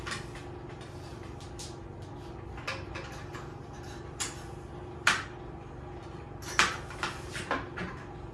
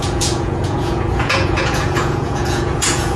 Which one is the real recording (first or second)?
first